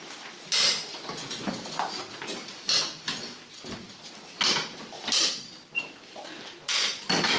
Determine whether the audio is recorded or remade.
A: recorded